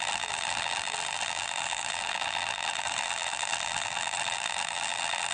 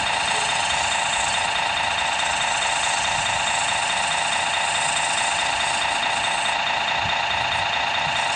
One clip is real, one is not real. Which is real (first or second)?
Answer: second